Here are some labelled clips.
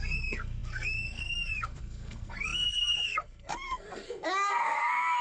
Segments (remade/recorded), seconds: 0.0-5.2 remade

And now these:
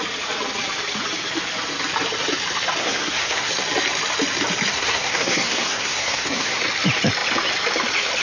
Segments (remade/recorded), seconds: 0.0-2.8 recorded; 2.8-3.5 remade; 3.5-4.7 recorded; 4.7-6.6 remade; 6.6-8.2 recorded

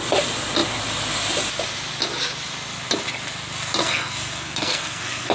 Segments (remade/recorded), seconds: 0.0-3.8 recorded; 3.8-5.3 remade

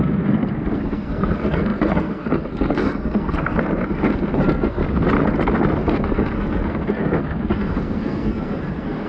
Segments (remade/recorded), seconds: 0.0-4.8 remade; 4.8-5.8 recorded; 5.8-9.1 remade

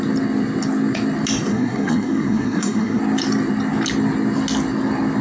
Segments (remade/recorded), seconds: 0.0-1.5 recorded; 1.5-3.0 remade; 3.0-5.2 recorded

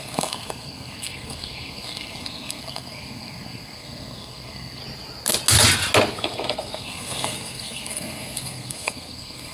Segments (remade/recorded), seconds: 0.0-4.8 remade; 4.8-6.1 recorded; 6.1-9.5 remade

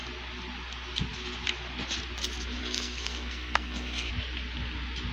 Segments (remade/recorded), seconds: 0.0-2.6 recorded; 2.6-4.1 remade; 4.1-5.1 recorded

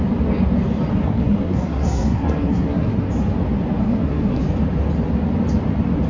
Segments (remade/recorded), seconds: 0.0-0.9 recorded; 0.9-3.1 remade; 3.1-3.8 recorded; 3.8-4.4 remade; 4.4-6.1 recorded